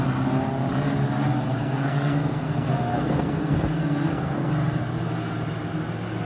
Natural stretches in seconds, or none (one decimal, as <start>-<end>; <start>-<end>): 0.0-1.5; 4.5-6.2